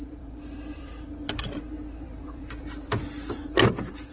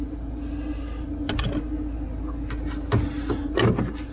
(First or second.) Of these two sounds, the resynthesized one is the first